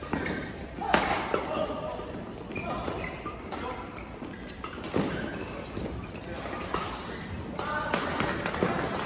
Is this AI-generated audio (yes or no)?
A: no